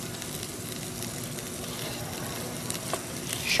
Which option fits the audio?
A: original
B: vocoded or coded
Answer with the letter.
A